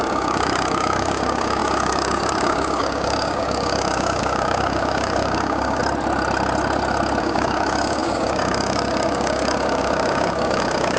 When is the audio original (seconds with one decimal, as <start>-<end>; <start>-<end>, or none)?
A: 5.8-7.2